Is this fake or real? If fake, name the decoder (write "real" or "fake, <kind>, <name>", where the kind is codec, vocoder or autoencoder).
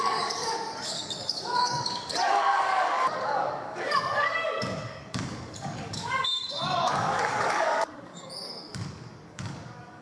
fake, codec, DAC